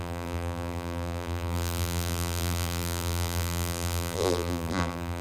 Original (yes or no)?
no